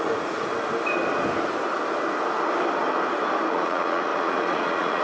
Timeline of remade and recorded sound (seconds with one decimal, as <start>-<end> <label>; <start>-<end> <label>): 0.0-0.5 remade; 0.5-3.5 recorded; 3.5-5.0 remade